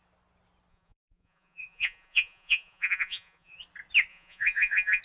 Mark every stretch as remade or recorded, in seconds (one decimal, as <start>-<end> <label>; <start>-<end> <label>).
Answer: 0.0-0.7 recorded; 0.7-3.6 remade; 3.6-4.1 recorded; 4.1-5.0 remade